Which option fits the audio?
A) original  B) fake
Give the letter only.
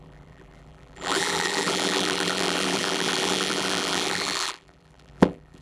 B